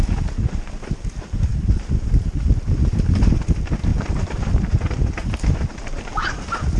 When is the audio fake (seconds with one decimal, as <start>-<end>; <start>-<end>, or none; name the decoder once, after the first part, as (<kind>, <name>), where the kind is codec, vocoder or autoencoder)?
none